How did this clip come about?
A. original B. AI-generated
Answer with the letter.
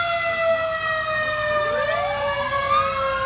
A